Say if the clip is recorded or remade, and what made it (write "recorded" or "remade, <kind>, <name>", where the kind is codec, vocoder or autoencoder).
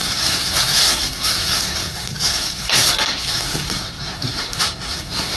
remade, codec, SNAC